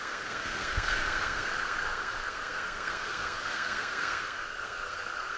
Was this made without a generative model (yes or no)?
no